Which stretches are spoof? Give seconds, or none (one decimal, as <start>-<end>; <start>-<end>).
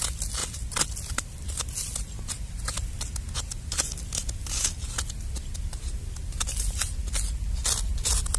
none